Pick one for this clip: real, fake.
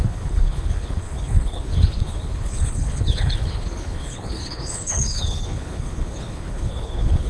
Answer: fake